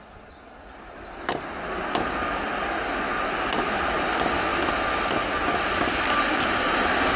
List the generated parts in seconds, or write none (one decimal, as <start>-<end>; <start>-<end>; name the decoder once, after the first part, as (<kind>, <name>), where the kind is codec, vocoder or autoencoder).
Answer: none